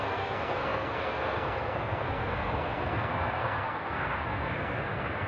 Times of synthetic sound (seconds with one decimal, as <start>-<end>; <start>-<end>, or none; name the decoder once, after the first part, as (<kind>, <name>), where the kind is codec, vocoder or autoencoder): 0.0-5.3 (codec, SNAC)